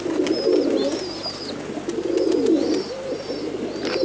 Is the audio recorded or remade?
recorded